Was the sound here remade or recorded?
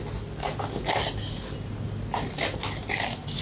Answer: recorded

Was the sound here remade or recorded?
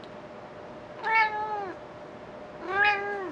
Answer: recorded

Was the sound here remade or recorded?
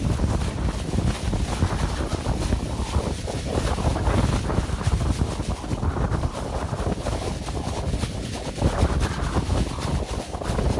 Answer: recorded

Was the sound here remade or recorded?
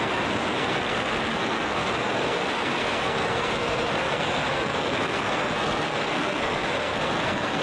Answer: remade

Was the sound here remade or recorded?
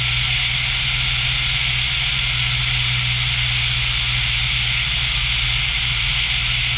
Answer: recorded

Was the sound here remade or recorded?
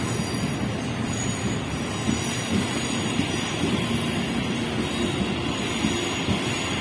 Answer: recorded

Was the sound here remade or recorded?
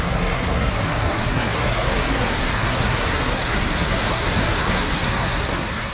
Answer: remade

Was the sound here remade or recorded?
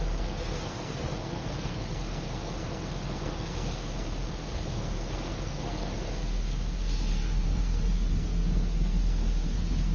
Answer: remade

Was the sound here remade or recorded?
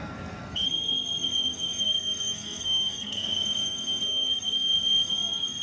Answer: remade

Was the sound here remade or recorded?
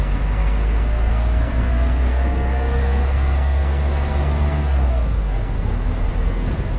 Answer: remade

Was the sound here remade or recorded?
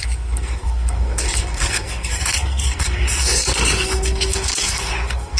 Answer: remade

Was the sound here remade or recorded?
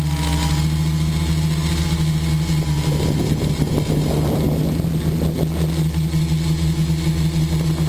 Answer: recorded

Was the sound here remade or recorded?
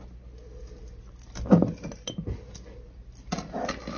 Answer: recorded